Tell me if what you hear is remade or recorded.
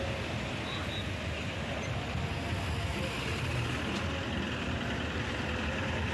recorded